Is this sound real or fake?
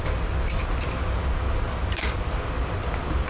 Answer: real